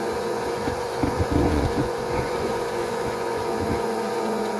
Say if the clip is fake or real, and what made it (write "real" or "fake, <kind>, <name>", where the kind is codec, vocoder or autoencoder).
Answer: fake, vocoder, Vocos